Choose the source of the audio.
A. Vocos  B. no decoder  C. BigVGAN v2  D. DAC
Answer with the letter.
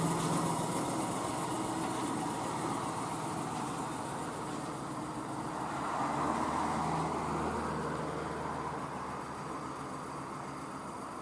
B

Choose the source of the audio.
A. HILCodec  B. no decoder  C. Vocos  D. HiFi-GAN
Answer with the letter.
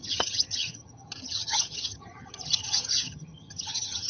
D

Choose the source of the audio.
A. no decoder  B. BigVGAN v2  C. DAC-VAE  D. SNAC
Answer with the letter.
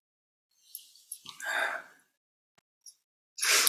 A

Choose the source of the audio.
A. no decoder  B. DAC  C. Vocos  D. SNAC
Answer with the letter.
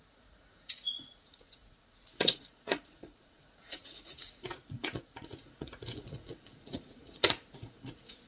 C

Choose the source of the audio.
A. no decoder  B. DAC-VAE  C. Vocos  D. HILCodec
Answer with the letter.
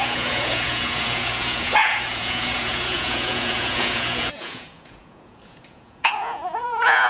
C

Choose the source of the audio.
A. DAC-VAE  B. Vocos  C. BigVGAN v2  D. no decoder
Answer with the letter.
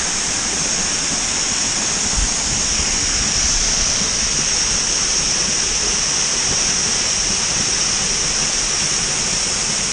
D